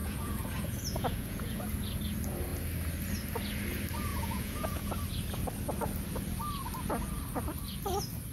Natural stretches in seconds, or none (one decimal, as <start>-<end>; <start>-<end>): 1.7-4.1; 5.0-8.3